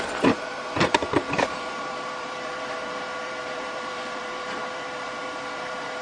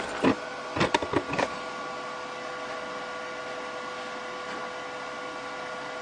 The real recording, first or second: second